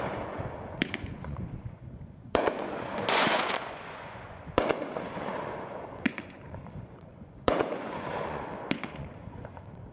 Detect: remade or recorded remade